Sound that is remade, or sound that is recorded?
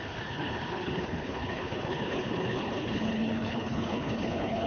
remade